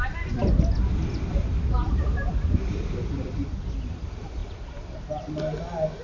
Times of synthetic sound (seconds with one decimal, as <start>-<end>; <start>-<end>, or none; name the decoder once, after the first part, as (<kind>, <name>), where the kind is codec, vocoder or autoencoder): 0.0-4.4 (vocoder, BigVGAN v2)